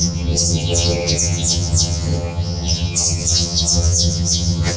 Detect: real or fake fake